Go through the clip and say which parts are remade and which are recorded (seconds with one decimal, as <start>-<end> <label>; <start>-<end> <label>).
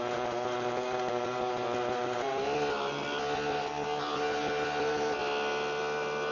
0.0-6.3 recorded